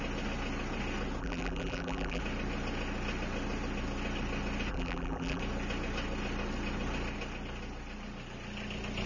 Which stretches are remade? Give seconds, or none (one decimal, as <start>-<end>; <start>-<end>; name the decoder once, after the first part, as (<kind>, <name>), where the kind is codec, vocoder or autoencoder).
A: 1.2-2.2 (vocoder, BigVGAN v2); 4.7-5.4